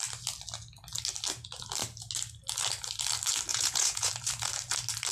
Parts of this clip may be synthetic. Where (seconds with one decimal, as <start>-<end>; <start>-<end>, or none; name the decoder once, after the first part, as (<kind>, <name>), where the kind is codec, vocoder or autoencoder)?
3.5-4.1 (vocoder, Vocos)